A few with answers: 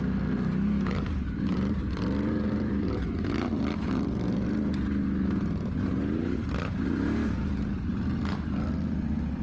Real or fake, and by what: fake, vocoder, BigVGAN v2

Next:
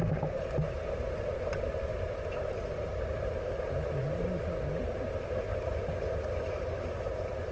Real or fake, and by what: real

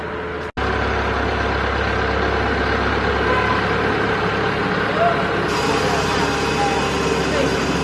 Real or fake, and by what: real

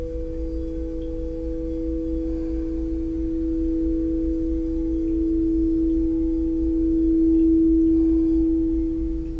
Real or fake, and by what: real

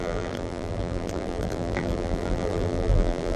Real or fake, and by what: fake, vocoder, BigVGAN v2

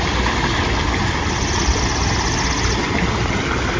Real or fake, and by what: real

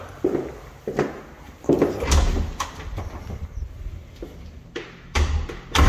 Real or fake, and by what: real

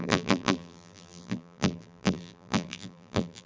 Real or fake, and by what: fake, vocoder, BigVGAN v2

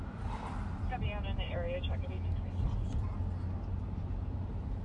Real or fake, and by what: real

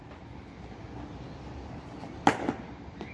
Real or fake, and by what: real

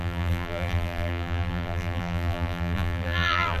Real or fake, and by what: fake, vocoder, BigVGAN v2